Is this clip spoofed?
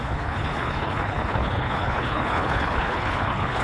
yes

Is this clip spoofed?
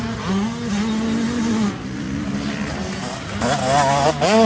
no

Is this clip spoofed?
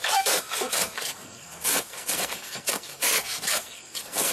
yes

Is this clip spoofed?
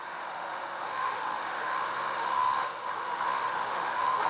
yes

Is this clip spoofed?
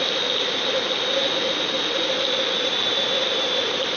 no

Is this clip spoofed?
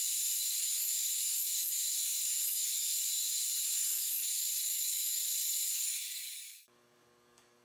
yes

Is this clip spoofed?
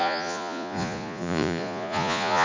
yes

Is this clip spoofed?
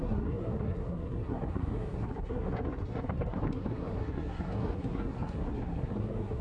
yes